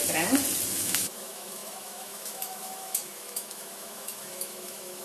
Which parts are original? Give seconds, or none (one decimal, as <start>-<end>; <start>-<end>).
0.0-0.7